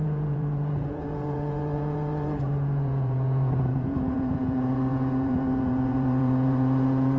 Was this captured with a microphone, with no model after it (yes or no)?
no